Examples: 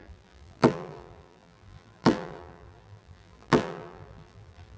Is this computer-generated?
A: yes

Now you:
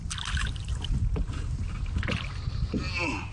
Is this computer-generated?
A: no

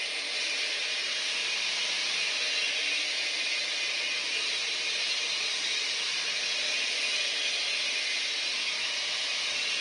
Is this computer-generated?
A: no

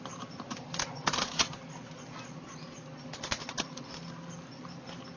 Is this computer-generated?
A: no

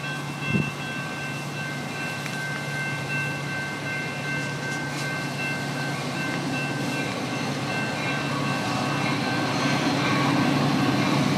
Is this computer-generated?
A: no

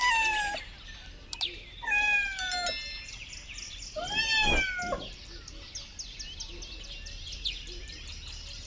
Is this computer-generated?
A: no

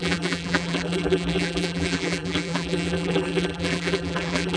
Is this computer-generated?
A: yes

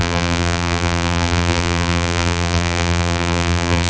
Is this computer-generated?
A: yes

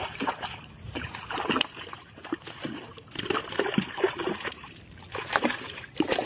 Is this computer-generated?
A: yes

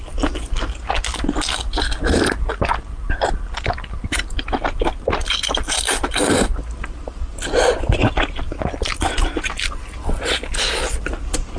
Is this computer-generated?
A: no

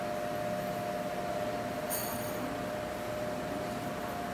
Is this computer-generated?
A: no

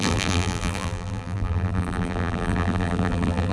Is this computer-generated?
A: yes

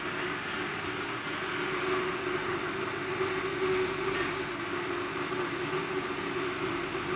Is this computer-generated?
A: no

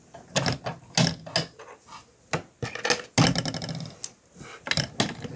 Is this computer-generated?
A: no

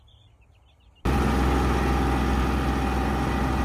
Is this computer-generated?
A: no